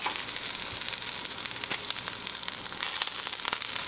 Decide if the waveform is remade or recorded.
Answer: recorded